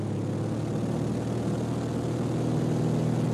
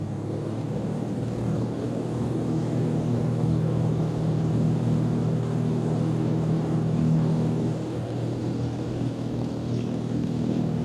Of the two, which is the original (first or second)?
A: first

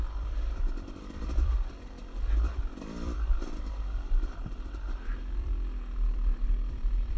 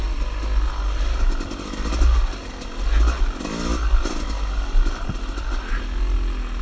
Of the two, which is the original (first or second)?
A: second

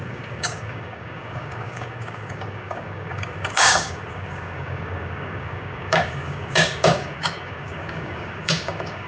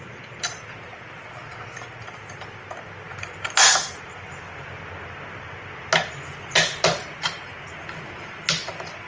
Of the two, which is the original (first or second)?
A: second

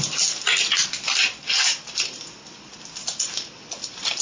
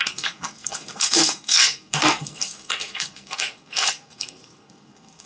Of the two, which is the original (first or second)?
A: first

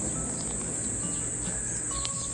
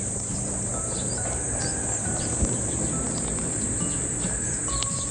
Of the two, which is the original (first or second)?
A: first